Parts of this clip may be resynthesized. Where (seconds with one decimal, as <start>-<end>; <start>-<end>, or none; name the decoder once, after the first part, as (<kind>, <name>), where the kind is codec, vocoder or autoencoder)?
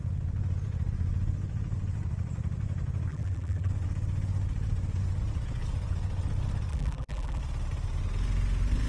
3.1-3.7 (vocoder, BigVGAN v2); 6.7-7.4